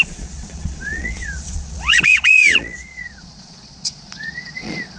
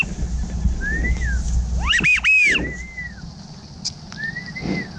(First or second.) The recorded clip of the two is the second